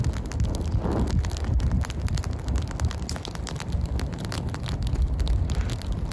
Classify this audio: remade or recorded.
recorded